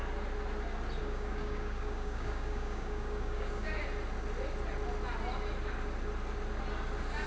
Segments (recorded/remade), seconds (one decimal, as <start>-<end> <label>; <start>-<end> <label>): 0.0-1.0 recorded; 1.0-3.8 remade; 3.8-7.3 recorded